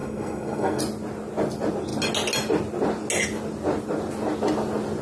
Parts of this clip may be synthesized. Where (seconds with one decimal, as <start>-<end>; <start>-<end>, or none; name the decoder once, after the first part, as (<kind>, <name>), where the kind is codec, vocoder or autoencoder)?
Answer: 0.0-0.8 (codec, SNAC)